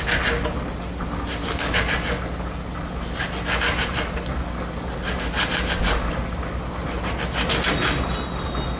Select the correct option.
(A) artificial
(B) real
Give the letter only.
B